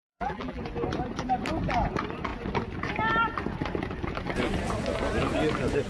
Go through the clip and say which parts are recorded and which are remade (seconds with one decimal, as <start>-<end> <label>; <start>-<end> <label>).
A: 0.0-0.6 remade; 0.6-5.9 recorded